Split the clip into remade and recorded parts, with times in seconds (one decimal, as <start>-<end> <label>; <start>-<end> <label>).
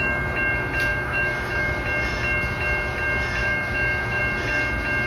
0.0-0.9 recorded; 0.9-1.7 remade; 1.7-3.4 recorded; 3.4-4.2 remade; 4.2-5.1 recorded